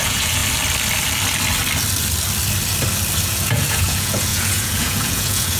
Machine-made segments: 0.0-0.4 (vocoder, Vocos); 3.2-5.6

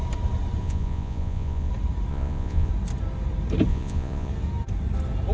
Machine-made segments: 0.6-1.7 (vocoder, Vocos); 2.1-2.7; 3.7-4.3

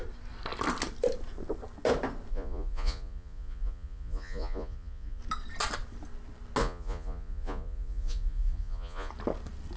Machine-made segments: 2.3-5.2 (vocoder, Vocos); 6.6-9.1

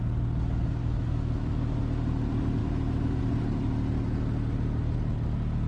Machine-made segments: 0.8-1.8 (autoencoder, DAC-VAE); 2.6-3.2

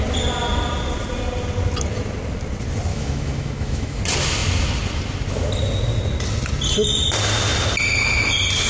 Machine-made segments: 2.9-4.0 (autoencoder, DAC-VAE)

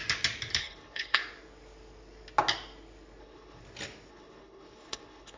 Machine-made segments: 0.6-1.2 (codec, HILCodec); 3.2-3.6; 4.1-5.4